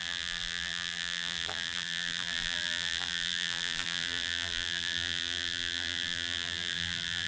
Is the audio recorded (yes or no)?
no